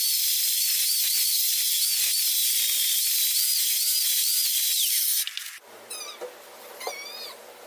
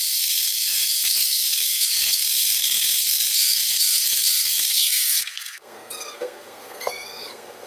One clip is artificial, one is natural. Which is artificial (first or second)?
second